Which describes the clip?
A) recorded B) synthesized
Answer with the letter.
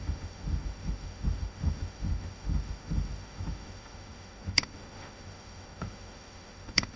B